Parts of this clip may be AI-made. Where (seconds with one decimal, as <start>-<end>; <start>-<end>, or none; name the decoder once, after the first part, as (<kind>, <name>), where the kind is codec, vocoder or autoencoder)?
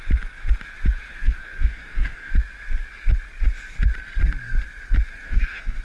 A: 1.1-2.3 (codec, SNAC); 5.1-5.8